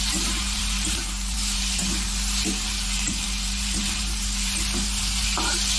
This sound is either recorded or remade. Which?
remade